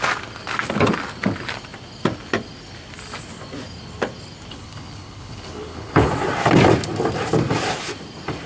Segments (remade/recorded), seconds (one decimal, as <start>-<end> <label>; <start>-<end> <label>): 0.0-4.5 recorded; 4.5-6.1 remade; 6.1-8.5 recorded